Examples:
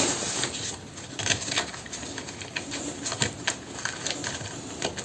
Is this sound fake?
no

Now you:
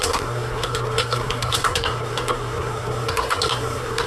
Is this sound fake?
yes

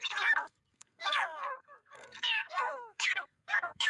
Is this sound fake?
yes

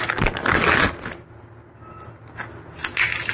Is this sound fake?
no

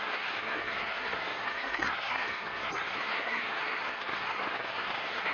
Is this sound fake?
yes